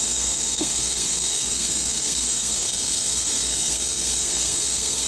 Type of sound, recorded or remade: remade